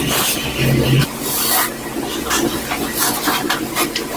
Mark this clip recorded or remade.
recorded